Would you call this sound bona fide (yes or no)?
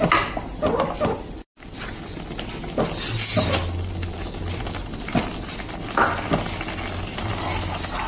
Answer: yes